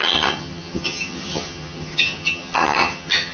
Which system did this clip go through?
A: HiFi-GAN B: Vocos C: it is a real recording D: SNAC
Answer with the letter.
A